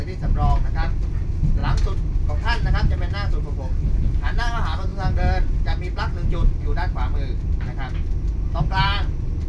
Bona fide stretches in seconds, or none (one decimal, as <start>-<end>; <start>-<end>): 0.0-9.5